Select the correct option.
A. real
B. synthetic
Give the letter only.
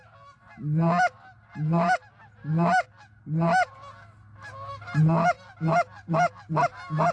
A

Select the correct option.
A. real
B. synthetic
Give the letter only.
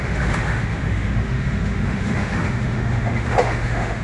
B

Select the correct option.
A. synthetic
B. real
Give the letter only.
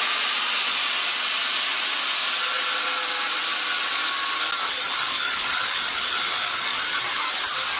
B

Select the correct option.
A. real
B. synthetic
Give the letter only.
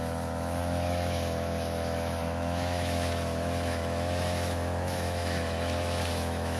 B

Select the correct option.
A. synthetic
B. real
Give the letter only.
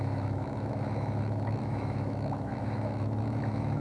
A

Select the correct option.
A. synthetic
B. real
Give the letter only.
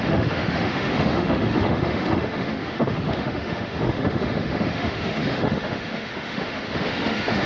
A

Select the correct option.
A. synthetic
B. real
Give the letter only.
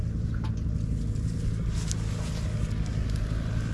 B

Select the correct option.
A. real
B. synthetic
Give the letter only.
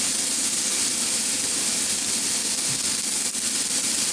A